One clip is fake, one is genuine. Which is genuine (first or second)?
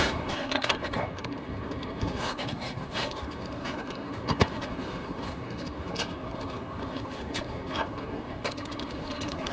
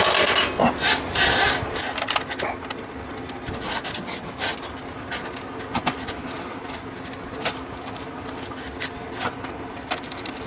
second